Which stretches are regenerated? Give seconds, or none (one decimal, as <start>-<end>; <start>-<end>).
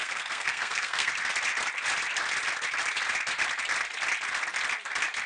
0.0-1.1